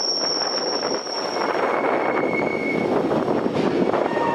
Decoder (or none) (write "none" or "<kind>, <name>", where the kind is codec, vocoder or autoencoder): none